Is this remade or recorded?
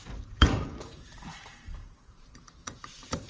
remade